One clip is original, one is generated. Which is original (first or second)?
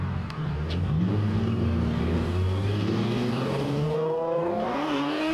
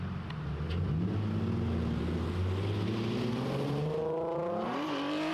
second